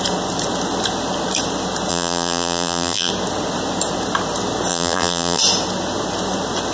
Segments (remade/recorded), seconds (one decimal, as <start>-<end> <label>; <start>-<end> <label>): 0.0-1.9 recorded; 1.9-3.1 remade; 3.1-4.7 recorded; 4.7-5.4 remade; 5.4-6.7 recorded